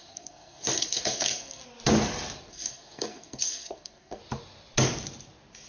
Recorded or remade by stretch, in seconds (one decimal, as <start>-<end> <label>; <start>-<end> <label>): 0.0-1.6 remade; 1.6-2.5 recorded; 2.5-4.2 remade; 4.2-5.7 recorded